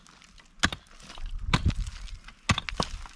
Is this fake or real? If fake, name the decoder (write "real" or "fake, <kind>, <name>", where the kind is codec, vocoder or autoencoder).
real